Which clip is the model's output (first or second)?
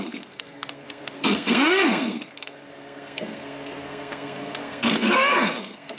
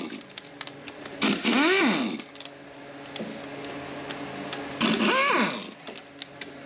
first